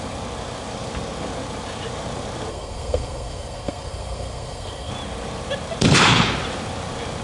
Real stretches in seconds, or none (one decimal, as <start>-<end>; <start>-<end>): 0.0-2.5; 4.9-7.2